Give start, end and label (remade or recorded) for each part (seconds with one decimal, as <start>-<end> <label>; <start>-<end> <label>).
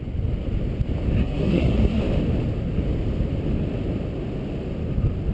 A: 0.0-1.2 recorded; 1.2-2.0 remade; 2.0-5.3 recorded